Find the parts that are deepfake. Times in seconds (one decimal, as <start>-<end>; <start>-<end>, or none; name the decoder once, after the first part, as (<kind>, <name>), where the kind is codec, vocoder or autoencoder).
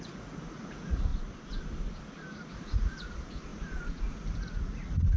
0.0-1.1 (vocoder, Vocos); 2.5-5.2